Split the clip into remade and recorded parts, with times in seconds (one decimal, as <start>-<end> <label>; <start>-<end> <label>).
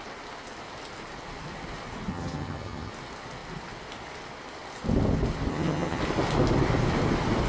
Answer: 0.0-2.1 recorded; 2.1-2.9 remade; 2.9-5.5 recorded; 5.5-6.0 remade; 6.0-7.5 recorded